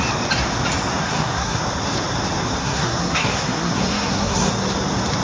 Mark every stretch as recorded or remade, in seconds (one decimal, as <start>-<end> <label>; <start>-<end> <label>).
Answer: 0.0-1.0 recorded; 1.0-1.6 remade; 1.6-2.6 recorded; 2.6-4.5 remade; 4.5-5.2 recorded

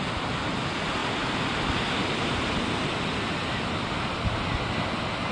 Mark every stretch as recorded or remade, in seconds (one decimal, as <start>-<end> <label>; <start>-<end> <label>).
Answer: 0.0-5.3 recorded

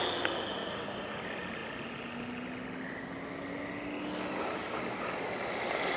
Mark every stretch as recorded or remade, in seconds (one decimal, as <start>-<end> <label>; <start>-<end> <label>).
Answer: 0.0-6.0 recorded

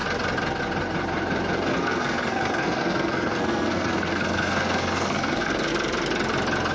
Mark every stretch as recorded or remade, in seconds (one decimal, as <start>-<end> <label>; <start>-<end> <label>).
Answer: 0.0-1.7 recorded; 1.7-5.7 remade; 5.7-6.7 recorded